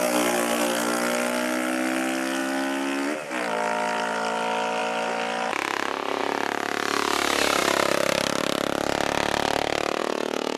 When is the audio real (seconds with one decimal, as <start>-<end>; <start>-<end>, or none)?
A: 0.0-10.0